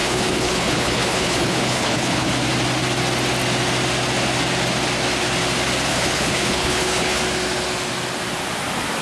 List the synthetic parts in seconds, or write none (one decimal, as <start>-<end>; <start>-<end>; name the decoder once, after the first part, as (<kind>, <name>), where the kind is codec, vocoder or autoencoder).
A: 0.0-2.3 (codec, HILCodec); 5.9-7.2